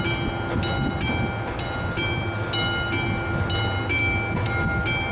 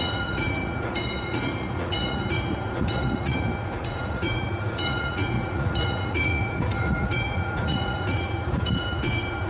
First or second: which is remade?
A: second